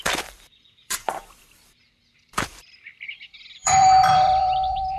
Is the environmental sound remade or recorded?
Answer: remade